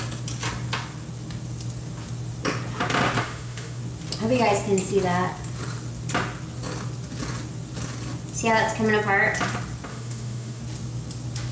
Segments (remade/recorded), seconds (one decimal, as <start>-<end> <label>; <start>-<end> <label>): 0.0-3.2 recorded; 3.2-3.8 remade; 3.8-9.9 recorded; 9.9-10.6 remade; 10.6-11.5 recorded